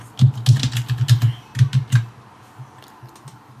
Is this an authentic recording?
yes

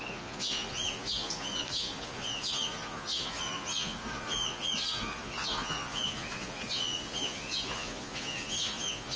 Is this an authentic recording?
no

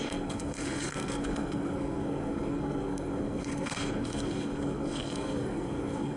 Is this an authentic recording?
no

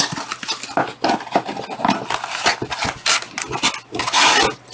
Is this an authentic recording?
yes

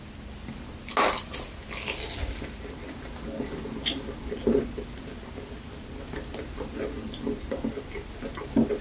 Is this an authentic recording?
yes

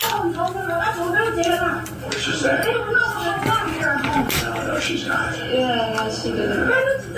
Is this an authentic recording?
yes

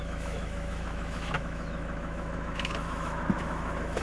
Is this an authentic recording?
no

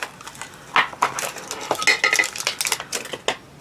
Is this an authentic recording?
yes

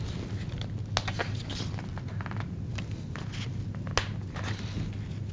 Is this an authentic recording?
yes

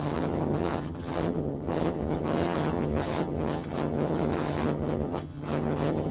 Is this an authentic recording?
no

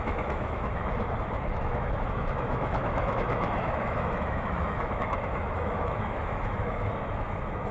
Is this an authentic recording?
no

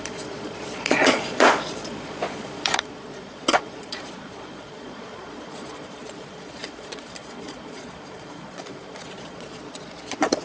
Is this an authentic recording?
no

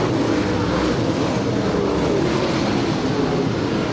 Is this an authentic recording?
yes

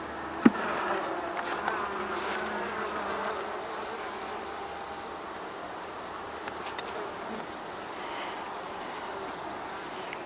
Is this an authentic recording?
yes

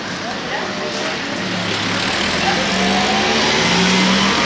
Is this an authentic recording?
yes